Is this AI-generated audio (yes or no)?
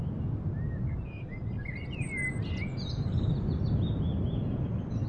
no